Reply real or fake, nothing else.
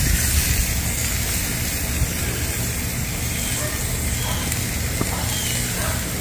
real